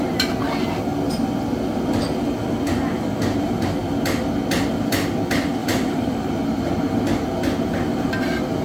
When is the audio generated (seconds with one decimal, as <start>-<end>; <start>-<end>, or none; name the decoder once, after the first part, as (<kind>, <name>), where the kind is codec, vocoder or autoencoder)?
5.6-7.0 (vocoder, BigVGAN v2)